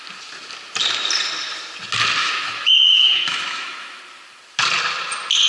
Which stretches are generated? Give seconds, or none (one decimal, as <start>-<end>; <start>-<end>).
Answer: 2.2-4.0